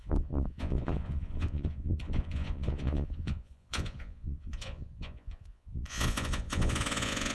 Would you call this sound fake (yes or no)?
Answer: yes